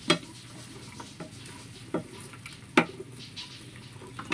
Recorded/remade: recorded